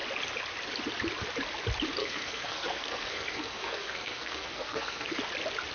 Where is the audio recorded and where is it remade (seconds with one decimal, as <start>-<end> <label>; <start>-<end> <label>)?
0.0-2.0 recorded; 2.0-5.2 remade; 5.2-5.7 recorded